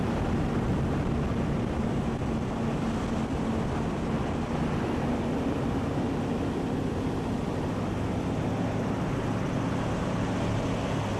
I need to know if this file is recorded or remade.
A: recorded